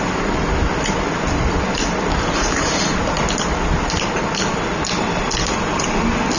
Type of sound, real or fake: real